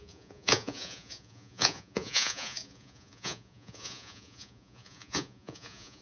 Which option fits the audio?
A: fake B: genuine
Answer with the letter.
A